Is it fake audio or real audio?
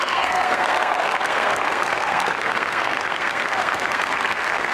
fake